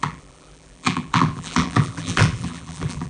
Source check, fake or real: fake